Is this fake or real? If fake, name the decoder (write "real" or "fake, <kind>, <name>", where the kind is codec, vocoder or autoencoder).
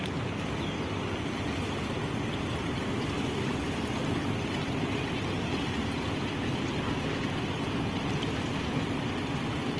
real